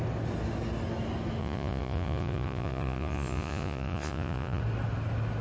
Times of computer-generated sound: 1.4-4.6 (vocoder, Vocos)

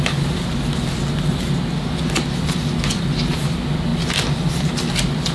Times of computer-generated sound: none

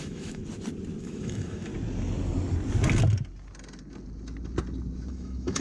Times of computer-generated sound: 0.0-0.4 (autoencoder, DAC-VAE); 1.0-1.7; 5.1-5.6

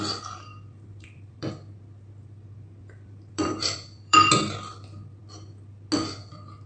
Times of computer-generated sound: 0.5-1.5 (vocoder, BigVGAN v2); 2.8-4.3

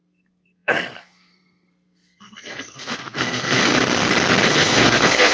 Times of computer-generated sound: 0.0-3.7 (codec, SNAC); 4.5-5.3

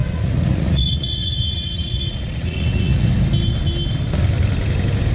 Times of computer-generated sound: 0.0-3.1 (vocoder, Vocos)